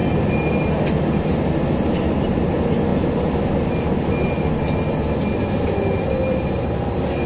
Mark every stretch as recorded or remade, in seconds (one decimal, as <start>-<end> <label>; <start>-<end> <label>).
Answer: 0.0-7.3 recorded